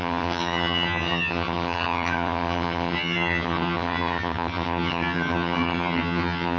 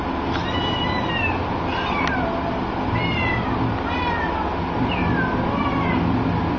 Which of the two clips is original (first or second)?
second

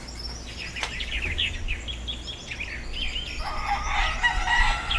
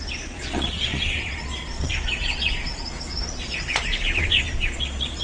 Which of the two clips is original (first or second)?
first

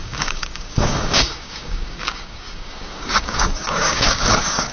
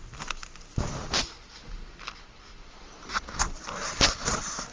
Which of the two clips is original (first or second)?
second